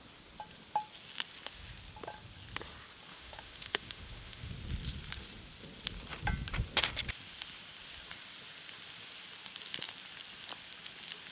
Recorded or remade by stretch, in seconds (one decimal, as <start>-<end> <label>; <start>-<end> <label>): 0.0-3.1 recorded; 3.1-4.5 remade; 4.5-11.3 recorded